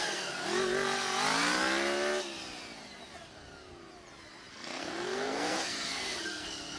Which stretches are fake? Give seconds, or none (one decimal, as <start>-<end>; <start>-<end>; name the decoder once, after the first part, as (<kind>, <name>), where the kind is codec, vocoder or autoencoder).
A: 0.0-0.4 (codec, SNAC); 4.5-6.8

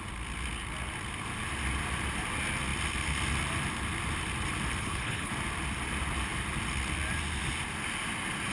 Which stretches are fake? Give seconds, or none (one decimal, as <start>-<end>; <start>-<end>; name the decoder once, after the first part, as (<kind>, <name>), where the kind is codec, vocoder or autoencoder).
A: 4.8-5.3 (codec, HILCodec)

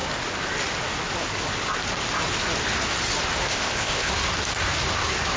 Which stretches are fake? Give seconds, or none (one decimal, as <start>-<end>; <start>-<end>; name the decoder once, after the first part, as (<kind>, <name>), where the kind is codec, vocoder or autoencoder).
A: 3.5-4.1 (codec, ZipCodec)